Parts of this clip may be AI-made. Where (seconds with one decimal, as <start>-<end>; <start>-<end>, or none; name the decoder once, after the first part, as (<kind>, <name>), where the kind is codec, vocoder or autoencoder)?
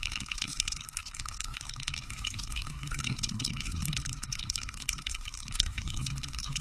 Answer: 0.0-6.6 (codec, SNAC)